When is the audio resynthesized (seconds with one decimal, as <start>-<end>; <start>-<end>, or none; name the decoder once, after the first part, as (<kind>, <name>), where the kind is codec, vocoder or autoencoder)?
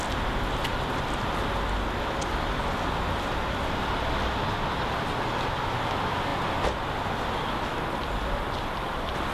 none